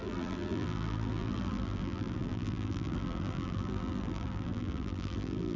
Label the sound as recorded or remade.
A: remade